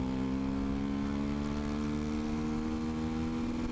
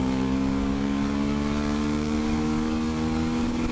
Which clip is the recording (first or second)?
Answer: first